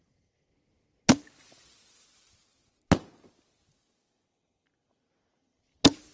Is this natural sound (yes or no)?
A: yes